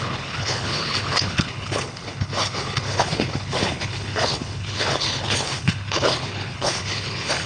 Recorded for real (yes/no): no